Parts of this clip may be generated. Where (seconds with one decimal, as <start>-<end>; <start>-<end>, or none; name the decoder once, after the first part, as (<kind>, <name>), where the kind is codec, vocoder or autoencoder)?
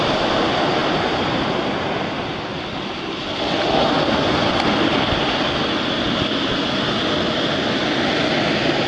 0.8-1.4 (vocoder, BigVGAN v2)